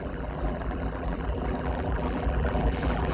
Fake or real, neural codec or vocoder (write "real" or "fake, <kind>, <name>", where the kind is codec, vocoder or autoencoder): fake, vocoder, BigVGAN v2